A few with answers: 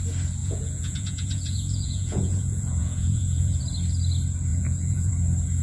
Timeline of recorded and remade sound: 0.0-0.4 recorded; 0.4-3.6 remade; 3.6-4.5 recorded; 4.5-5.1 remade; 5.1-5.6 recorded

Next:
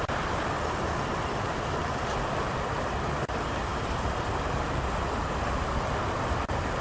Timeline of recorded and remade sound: 0.0-6.8 recorded

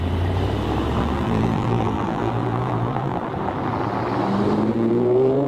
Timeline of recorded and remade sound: 0.0-1.0 recorded; 1.0-3.3 remade; 3.3-4.7 recorded; 4.7-5.5 remade